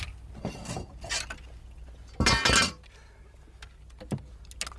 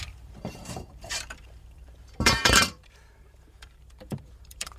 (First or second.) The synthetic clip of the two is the second